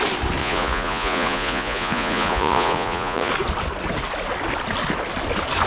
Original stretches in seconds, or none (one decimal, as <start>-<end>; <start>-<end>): 0.0-0.4; 3.3-5.7